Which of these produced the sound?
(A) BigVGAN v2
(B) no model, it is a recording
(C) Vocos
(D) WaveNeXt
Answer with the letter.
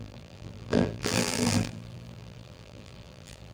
A